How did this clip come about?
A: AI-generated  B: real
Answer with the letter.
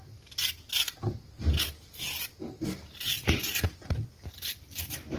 B